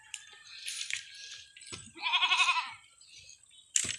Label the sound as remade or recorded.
recorded